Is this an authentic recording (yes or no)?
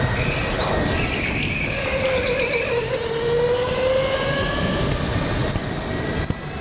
yes